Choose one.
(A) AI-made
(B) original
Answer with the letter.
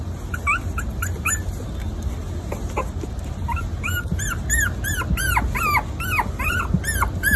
B